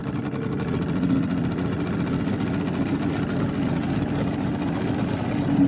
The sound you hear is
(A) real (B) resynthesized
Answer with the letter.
A